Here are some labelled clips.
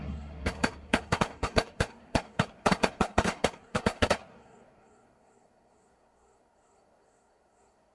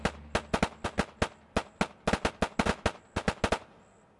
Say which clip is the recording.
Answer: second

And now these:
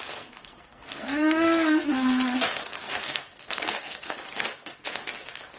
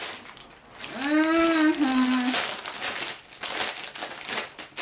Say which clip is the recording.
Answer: second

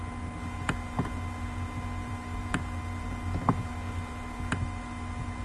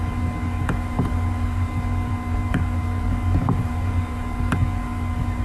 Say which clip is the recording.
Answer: first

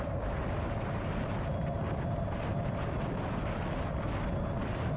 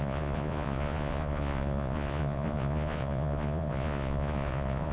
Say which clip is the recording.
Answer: first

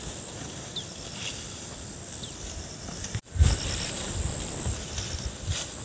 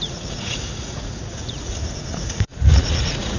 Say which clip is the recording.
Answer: first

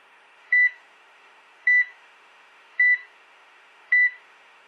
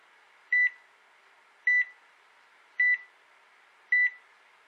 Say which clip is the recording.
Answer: second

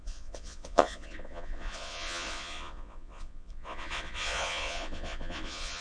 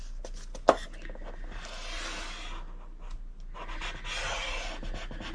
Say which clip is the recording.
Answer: second